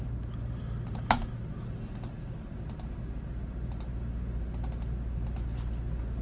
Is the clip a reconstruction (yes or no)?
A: no